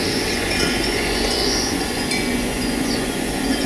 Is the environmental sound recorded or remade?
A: remade